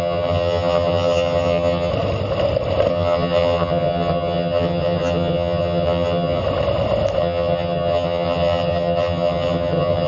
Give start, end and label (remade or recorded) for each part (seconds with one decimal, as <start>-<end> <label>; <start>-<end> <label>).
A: 0.0-1.9 remade; 1.9-2.9 recorded; 2.9-6.4 remade; 6.4-7.2 recorded; 7.2-10.1 remade